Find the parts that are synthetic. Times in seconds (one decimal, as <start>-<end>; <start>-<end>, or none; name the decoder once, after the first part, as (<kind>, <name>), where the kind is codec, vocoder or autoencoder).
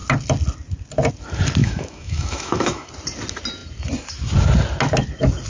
1.6-2.9 (autoencoder, DAC-VAE)